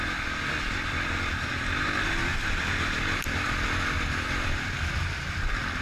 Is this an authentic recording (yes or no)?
yes